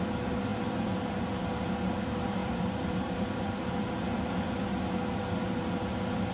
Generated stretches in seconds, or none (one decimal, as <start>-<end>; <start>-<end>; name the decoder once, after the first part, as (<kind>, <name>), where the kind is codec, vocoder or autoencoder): 2.4-3.4 (vocoder, BigVGAN v2)